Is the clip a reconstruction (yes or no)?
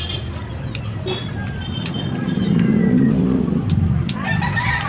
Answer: no